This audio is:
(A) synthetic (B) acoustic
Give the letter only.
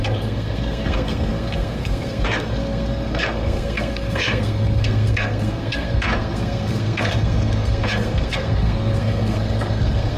A